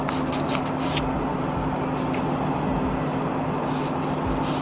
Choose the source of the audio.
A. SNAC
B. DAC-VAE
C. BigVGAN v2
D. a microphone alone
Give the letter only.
D